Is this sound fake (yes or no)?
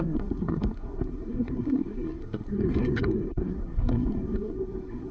yes